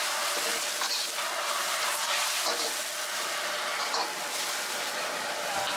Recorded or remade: recorded